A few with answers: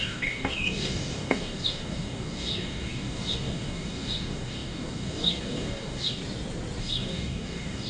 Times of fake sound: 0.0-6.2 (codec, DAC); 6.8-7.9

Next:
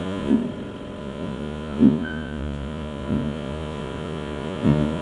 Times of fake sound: 0.0-0.4 (vocoder, Vocos); 1.0-5.0

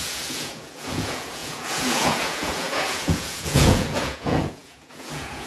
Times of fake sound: 0.0-5.5 (vocoder, Vocos)

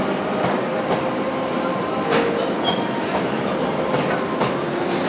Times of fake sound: none